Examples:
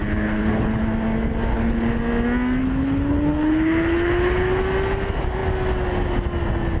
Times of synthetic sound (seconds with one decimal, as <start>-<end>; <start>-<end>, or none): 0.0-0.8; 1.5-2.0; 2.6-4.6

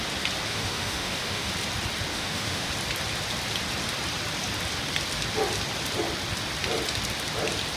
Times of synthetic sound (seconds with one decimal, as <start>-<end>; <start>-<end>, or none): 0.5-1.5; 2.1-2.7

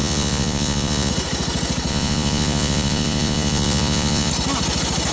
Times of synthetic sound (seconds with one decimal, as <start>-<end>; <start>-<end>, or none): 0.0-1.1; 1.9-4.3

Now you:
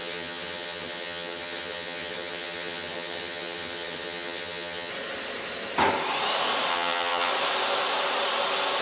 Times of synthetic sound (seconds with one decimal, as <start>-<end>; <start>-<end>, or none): 0.0-4.9; 6.7-7.3

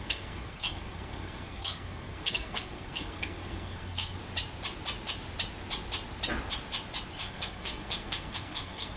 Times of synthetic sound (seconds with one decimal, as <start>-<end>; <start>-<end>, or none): 0.0-4.2; 7.2-9.0